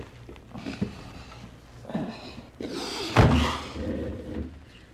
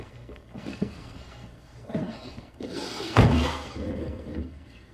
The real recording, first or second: first